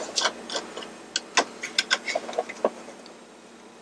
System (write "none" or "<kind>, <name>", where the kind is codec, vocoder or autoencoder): none